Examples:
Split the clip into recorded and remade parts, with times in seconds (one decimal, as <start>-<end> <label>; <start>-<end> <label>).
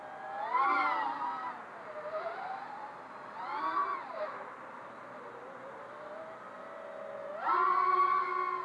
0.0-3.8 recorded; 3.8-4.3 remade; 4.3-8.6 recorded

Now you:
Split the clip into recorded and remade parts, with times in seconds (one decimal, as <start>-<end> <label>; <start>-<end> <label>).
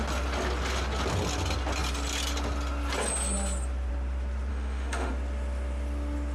0.0-4.5 recorded; 4.5-5.1 remade; 5.1-6.3 recorded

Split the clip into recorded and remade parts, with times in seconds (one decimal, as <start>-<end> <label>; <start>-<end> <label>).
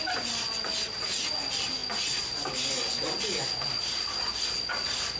0.0-5.2 recorded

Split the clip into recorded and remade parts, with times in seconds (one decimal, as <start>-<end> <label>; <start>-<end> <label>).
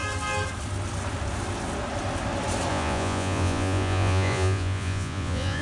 0.0-2.7 recorded; 2.7-5.6 remade